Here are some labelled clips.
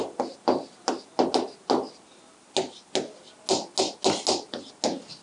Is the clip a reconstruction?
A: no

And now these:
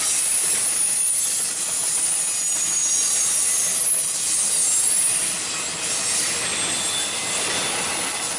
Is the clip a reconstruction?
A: no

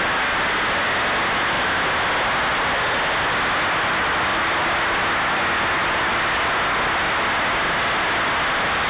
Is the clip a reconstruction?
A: no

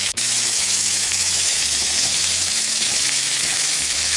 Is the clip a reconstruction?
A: yes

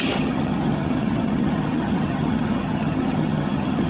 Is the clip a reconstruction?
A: yes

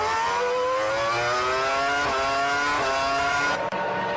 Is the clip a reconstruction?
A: no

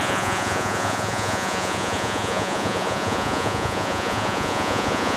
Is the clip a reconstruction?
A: yes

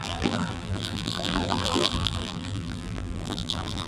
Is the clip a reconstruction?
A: yes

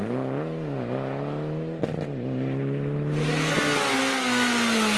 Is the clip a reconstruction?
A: no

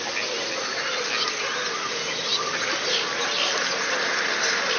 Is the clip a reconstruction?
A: no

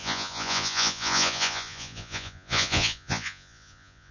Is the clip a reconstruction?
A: yes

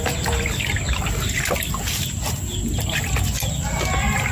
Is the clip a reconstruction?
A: no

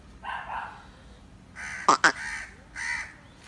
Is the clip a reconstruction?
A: no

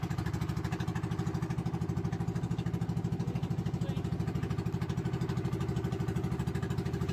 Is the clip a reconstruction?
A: no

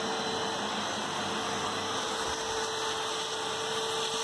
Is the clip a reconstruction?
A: yes